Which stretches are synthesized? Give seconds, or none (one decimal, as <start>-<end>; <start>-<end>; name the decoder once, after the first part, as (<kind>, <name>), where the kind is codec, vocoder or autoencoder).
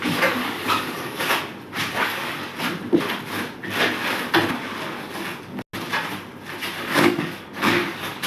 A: 0.0-1.3 (codec, DAC); 1.9-2.5; 6.8-8.3